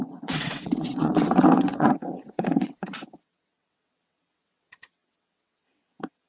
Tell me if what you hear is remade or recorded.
remade